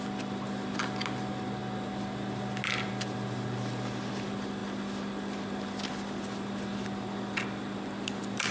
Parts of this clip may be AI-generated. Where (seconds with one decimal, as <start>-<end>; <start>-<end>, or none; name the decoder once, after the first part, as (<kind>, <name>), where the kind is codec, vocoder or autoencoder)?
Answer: none